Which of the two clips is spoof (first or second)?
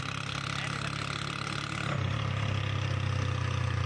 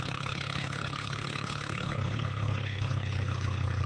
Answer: second